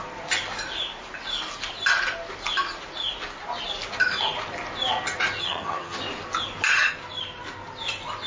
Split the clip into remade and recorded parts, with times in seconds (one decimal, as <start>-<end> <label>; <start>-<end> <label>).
0.0-5.4 recorded; 5.4-6.0 remade; 6.0-8.3 recorded